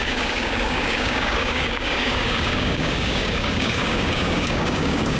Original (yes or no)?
no